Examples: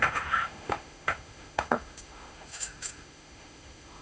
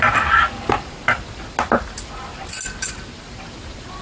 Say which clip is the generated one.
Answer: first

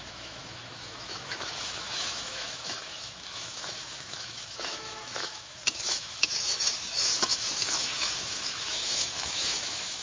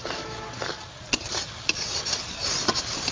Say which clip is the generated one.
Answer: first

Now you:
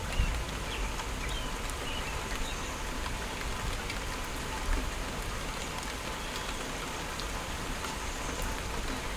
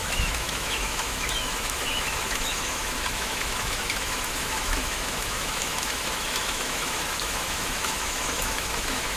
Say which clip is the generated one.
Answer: second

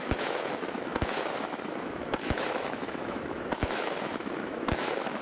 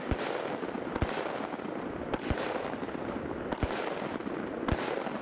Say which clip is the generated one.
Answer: first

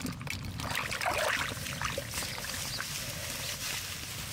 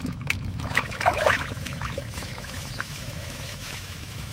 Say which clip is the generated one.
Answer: second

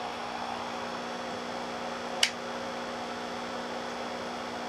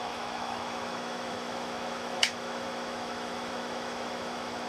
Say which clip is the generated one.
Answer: second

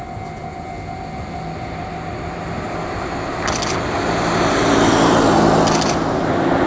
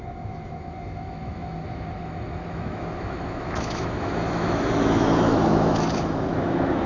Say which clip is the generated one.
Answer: second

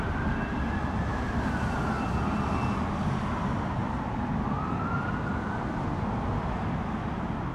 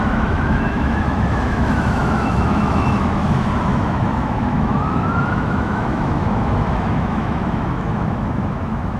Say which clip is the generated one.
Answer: second